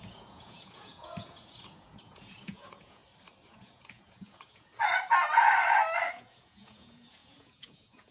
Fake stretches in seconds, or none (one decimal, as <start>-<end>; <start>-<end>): 0.0-3.0; 3.5-4.7; 6.1-8.1